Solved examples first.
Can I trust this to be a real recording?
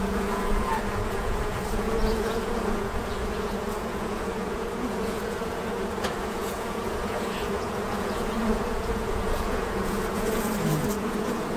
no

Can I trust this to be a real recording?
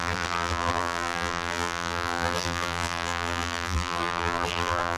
no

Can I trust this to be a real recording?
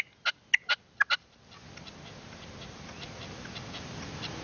yes